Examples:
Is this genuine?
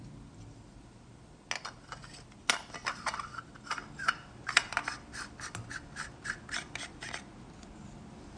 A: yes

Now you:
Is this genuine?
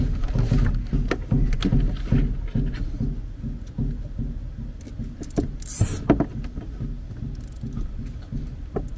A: yes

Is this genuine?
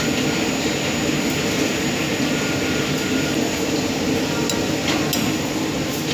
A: yes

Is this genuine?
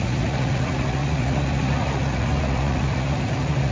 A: no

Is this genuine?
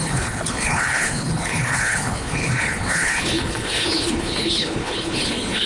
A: no